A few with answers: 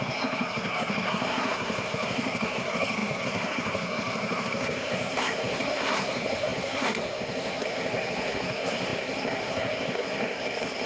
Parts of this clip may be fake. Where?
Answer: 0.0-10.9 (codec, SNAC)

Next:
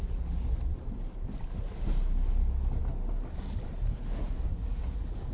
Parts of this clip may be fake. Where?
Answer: none